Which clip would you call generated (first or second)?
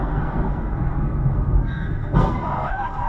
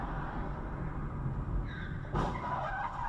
first